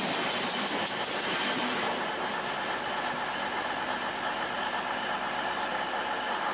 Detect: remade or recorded recorded